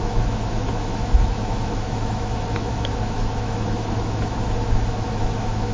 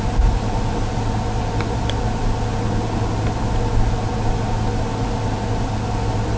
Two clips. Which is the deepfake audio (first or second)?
first